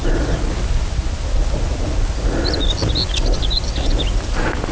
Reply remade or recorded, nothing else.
recorded